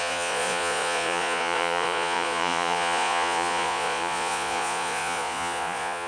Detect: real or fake fake